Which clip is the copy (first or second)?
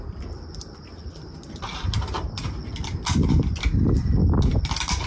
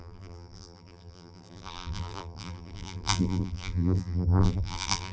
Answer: second